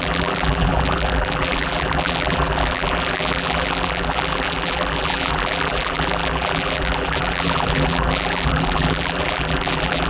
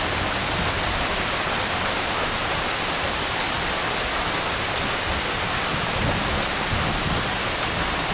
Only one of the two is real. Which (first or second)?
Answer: second